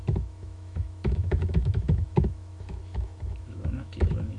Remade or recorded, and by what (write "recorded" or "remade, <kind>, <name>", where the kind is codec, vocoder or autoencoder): remade, autoencoder, DAC-VAE